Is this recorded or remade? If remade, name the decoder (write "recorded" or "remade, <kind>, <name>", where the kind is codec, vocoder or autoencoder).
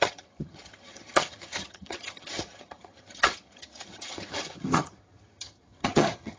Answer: remade, vocoder, HiFi-GAN